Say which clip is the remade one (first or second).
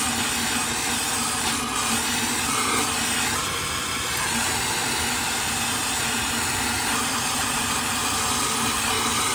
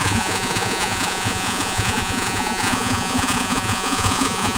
second